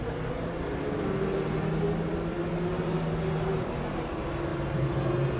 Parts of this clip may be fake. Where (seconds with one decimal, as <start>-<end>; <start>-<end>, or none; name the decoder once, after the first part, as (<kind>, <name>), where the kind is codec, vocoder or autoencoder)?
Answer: none